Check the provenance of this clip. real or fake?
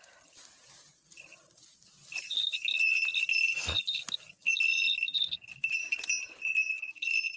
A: real